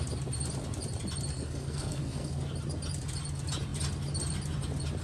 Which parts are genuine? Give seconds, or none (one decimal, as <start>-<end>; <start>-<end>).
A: 0.0-1.3; 2.4-5.0